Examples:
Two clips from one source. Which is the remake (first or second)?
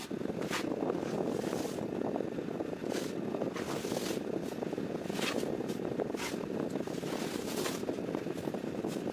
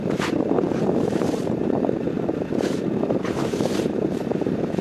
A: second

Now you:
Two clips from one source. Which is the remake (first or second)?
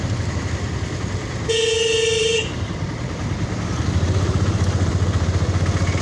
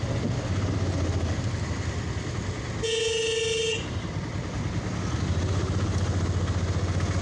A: first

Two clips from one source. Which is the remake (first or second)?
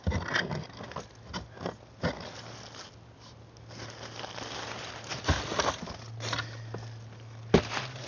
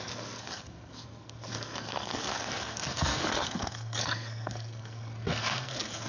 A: second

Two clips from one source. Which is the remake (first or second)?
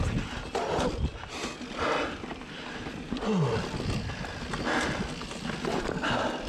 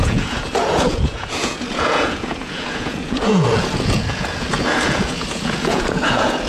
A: second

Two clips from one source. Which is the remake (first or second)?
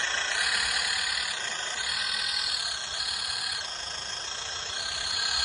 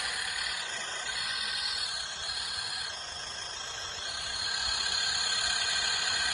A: second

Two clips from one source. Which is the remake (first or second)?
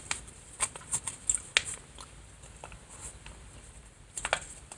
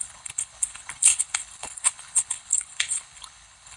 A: second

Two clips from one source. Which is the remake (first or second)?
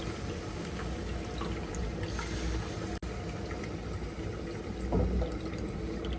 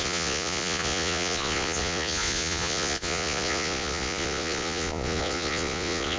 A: second